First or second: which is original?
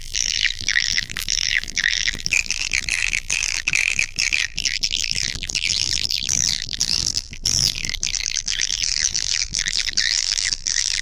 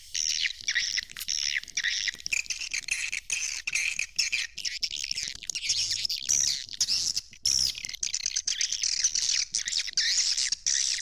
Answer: second